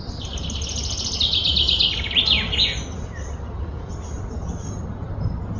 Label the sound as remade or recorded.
recorded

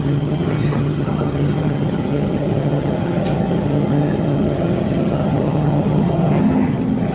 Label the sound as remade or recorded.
remade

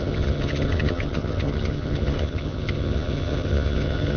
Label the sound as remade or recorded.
remade